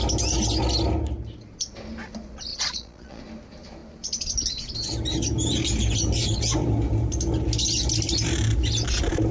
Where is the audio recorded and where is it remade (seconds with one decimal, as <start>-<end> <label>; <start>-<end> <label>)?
0.0-2.5 recorded; 2.5-3.2 remade; 3.2-9.3 recorded